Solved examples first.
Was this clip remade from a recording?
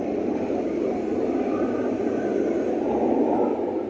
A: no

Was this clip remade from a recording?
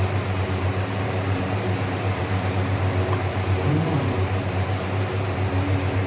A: yes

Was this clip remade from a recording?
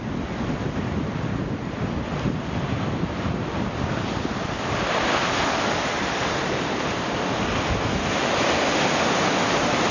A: no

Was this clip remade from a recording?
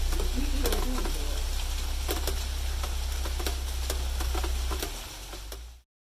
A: no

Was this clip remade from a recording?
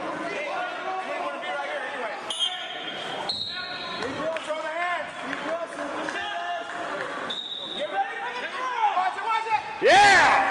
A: no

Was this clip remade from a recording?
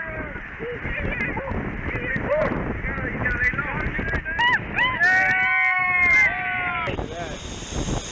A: no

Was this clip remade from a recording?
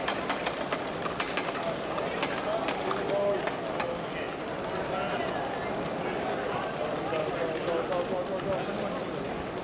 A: no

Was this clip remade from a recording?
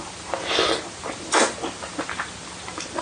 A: yes